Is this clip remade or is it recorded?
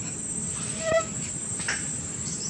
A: recorded